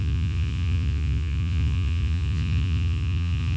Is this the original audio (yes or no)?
no